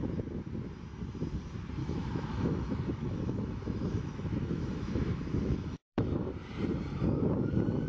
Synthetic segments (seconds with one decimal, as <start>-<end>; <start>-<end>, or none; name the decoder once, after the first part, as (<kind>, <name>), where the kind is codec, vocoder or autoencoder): 1.8-6.3 (autoencoder, DAC-VAE)